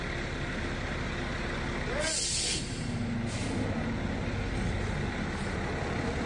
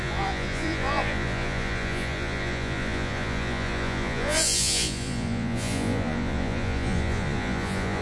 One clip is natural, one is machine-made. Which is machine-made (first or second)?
second